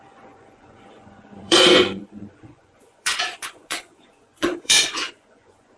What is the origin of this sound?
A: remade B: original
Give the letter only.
A